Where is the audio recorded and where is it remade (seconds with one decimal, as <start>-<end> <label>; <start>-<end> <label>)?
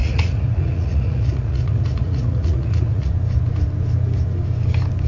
0.0-3.1 remade; 3.1-5.1 recorded